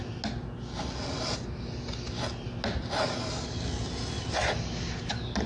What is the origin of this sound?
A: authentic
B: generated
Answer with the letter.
A